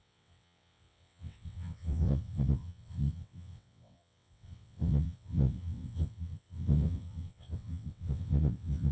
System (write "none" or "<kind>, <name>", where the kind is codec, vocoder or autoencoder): vocoder, WaveNeXt